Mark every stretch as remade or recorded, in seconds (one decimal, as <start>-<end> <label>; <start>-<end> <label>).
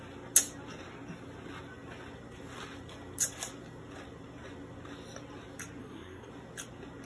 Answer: 0.0-5.8 recorded; 5.8-6.3 remade; 6.3-7.1 recorded